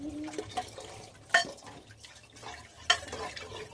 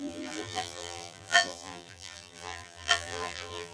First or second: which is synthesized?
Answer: second